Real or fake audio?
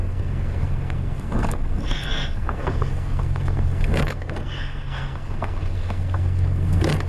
fake